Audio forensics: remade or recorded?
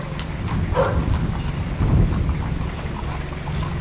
recorded